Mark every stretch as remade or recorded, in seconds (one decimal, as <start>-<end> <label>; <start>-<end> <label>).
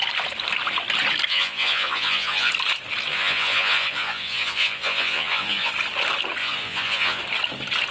0.0-1.3 recorded; 1.3-2.5 remade; 2.5-3.1 recorded; 3.1-5.7 remade; 5.7-6.4 recorded; 6.4-7.2 remade; 7.2-7.9 recorded